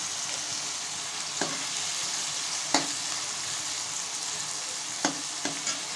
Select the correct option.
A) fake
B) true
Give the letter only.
B